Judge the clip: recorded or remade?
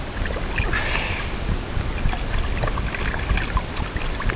recorded